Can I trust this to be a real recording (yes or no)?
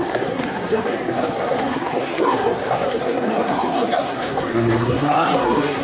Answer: no